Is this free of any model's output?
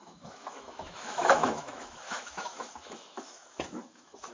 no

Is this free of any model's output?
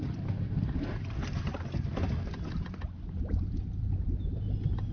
yes